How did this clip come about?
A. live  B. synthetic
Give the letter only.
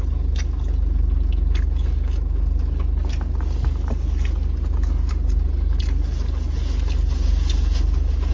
A